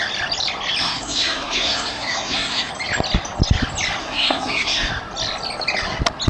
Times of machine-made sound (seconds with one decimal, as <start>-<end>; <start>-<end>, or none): 0.8-2.7; 4.0-4.9